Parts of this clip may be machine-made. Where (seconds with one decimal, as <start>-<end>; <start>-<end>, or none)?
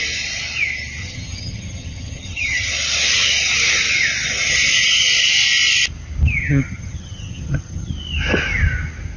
1.0-2.7; 6.4-7.9